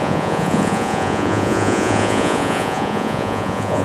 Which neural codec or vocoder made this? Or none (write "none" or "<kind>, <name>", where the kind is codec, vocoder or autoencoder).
vocoder, Vocos